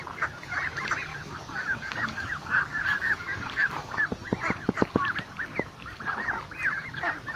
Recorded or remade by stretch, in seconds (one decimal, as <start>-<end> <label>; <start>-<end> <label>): 0.0-1.1 recorded; 1.1-4.0 remade; 4.0-7.4 recorded